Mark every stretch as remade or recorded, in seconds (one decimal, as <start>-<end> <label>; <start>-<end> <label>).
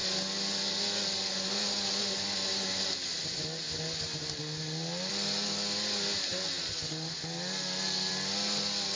0.0-9.0 recorded